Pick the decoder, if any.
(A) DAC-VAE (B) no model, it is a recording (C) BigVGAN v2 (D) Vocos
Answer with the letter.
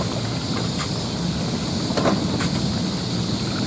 B